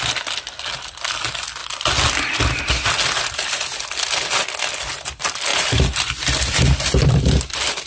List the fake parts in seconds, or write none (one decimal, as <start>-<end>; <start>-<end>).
none